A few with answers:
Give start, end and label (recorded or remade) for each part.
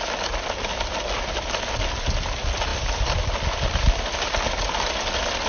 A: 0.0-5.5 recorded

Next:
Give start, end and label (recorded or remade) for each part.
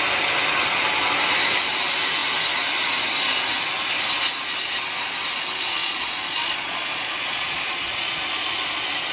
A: 0.0-5.8 recorded; 5.8-8.2 remade; 8.2-9.1 recorded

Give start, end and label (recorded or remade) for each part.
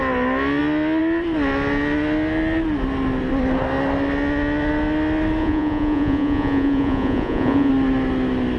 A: 0.0-5.4 recorded; 5.4-7.7 remade; 7.7-8.6 recorded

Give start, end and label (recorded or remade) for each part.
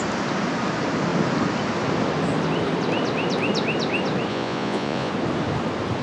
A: 0.0-4.3 recorded; 4.3-5.1 remade; 5.1-6.0 recorded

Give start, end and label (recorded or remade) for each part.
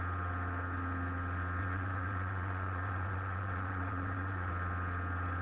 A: 0.0-1.6 recorded; 1.6-4.5 remade; 4.5-5.4 recorded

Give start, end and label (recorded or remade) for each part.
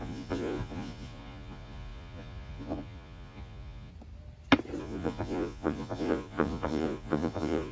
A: 0.0-3.9 remade; 3.9-4.8 recorded; 4.8-7.7 remade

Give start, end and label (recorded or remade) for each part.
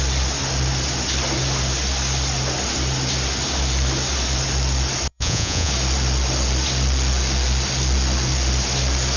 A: 0.0-5.1 recorded; 5.1-5.7 remade; 5.7-9.2 recorded